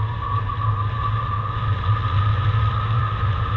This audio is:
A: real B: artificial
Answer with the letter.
A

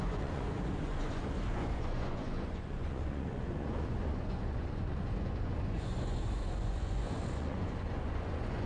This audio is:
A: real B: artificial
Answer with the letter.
B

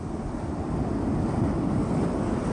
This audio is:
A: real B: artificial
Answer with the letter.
A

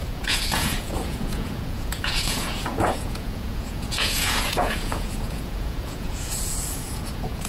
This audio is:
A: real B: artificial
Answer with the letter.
B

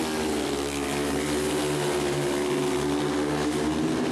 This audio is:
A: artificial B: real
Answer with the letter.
B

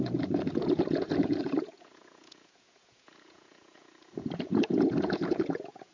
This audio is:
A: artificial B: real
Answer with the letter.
A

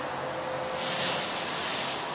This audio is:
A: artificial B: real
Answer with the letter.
B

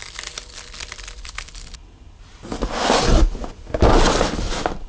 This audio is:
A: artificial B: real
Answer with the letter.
B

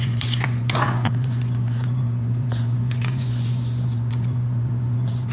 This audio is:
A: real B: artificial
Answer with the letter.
B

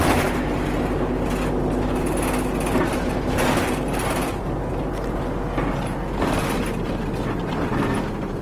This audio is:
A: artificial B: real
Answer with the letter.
B